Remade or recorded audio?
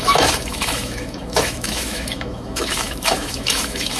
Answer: remade